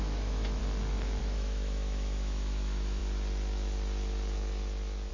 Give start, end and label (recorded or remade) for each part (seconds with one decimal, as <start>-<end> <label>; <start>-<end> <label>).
0.0-0.6 remade; 0.6-1.2 recorded; 1.2-3.0 remade; 3.0-5.1 recorded